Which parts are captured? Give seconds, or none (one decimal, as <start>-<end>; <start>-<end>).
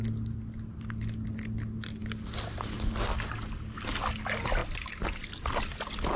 0.0-6.2